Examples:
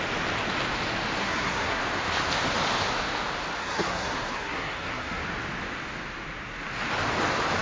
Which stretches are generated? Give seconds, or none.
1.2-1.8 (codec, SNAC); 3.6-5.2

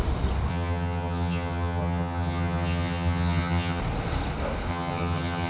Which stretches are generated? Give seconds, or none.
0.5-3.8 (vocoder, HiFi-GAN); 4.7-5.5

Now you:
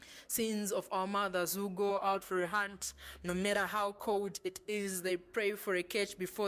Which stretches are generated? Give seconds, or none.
1.9-5.1 (codec, SNAC)

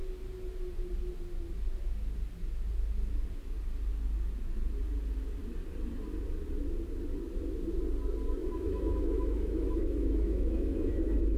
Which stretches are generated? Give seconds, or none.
8.4-11.4 (autoencoder, DAC-VAE)

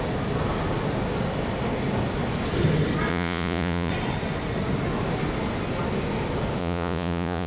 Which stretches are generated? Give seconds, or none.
3.1-3.9 (vocoder, Vocos); 6.6-7.5

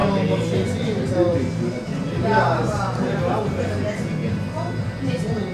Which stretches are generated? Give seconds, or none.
0.0-1.0 (vocoder, BigVGAN v2); 2.0-3.2

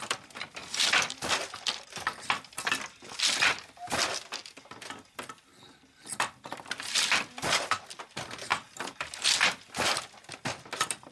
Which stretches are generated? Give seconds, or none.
none

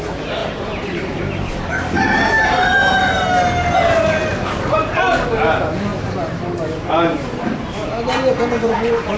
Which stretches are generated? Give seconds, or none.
0.4-1.7 (vocoder, BigVGAN v2); 4.3-4.9